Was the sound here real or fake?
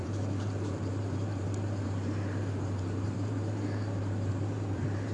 fake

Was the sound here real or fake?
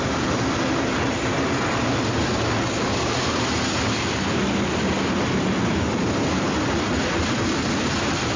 fake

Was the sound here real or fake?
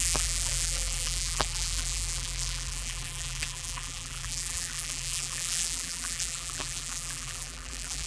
fake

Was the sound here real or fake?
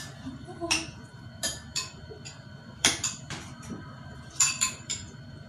fake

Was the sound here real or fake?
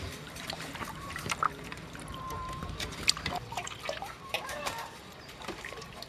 fake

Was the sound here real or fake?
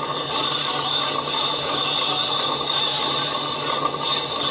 real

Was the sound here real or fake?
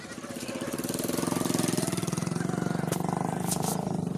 fake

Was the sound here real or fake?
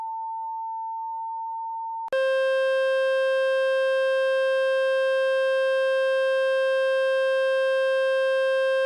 real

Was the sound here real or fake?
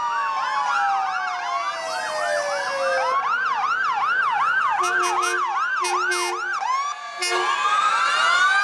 real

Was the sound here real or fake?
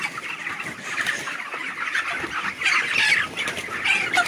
real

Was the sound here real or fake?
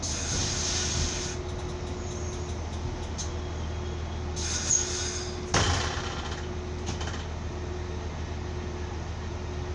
real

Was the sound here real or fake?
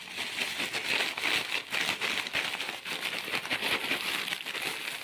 real